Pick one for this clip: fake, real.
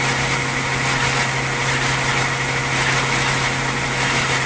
real